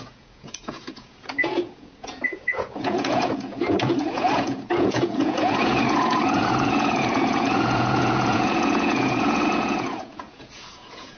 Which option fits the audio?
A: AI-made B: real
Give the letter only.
A